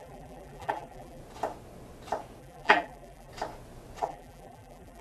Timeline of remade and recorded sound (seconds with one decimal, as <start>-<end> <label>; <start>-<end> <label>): 0.0-1.2 remade; 1.2-2.4 recorded; 2.4-3.3 remade; 3.3-4.0 recorded; 4.0-5.0 remade